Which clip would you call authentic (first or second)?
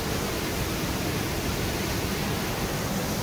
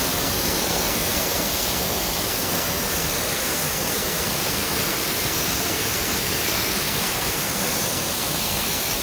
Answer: first